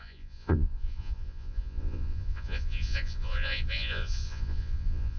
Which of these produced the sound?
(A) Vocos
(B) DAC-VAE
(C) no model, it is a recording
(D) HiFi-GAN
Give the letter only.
A